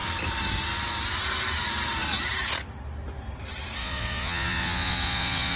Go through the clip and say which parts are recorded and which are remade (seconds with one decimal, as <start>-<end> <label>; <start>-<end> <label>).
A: 0.0-3.8 recorded; 3.8-5.6 remade